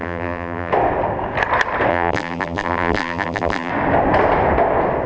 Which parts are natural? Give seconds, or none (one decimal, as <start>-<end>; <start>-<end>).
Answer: 0.7-1.9; 3.7-5.1